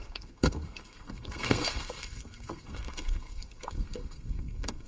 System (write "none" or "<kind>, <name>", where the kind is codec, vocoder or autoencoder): codec, SNAC